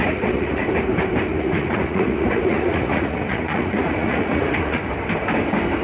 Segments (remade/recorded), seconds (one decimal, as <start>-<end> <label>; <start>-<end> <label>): 0.0-0.6 remade; 0.6-1.3 recorded; 1.3-4.8 remade; 4.8-5.8 recorded